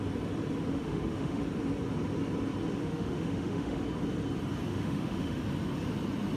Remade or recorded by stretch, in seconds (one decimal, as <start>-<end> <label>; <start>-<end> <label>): 0.0-0.7 recorded; 0.7-1.4 remade; 1.4-2.8 recorded; 2.8-3.8 remade; 3.8-4.7 recorded; 4.7-5.4 remade; 5.4-6.4 recorded